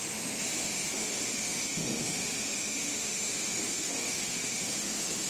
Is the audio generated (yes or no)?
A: yes